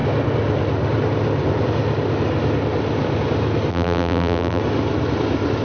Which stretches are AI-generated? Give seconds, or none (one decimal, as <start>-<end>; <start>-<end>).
3.7-4.6